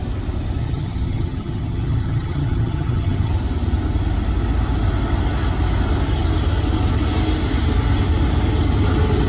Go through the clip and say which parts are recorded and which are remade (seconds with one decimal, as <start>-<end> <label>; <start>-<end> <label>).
0.0-0.6 recorded; 0.6-3.3 remade; 3.3-9.3 recorded